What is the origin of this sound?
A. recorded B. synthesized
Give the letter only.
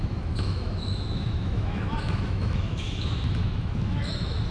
B